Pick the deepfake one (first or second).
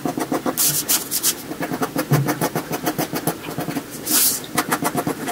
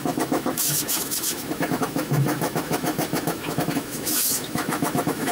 second